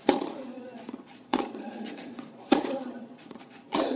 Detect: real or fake fake